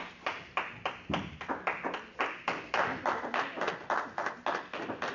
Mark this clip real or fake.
real